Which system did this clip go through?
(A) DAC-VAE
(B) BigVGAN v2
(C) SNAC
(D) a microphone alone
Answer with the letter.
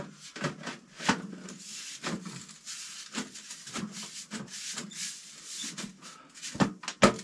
D